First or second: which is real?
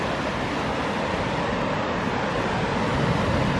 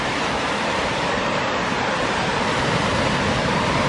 first